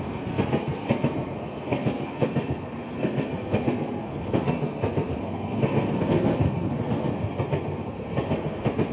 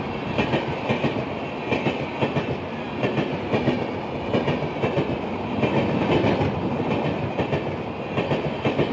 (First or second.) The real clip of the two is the second